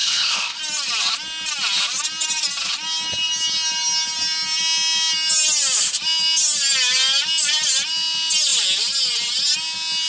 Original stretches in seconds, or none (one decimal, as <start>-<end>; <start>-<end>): 0.6-10.1